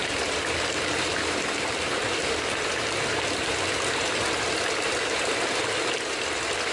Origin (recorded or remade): recorded